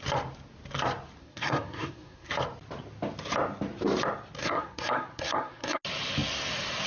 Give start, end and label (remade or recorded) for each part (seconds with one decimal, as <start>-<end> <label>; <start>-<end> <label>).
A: 0.0-1.2 recorded; 1.2-2.3 remade; 2.3-4.4 recorded; 4.4-5.8 remade; 5.8-6.9 recorded